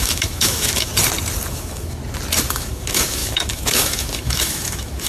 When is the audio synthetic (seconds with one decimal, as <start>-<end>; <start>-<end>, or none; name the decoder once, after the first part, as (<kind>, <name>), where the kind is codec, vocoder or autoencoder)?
0.0-0.9 (autoencoder, DAC-VAE); 1.5-2.0; 2.5-5.1